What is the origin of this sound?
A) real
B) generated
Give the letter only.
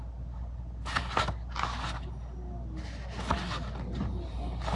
A